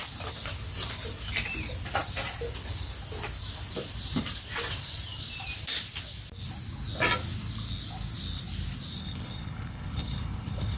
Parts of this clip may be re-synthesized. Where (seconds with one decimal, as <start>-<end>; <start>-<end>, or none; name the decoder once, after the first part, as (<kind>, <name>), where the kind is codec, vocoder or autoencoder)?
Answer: 9.0-10.8 (codec, HILCodec)